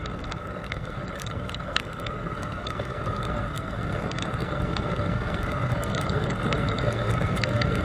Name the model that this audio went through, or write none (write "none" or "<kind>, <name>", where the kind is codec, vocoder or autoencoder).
codec, SNAC